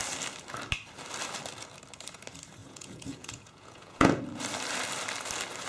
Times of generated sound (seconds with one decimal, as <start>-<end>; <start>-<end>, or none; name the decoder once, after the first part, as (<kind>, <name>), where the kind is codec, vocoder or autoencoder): 2.6-4.2 (vocoder, Vocos)